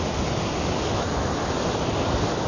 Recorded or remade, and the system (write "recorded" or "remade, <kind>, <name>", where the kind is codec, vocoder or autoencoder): recorded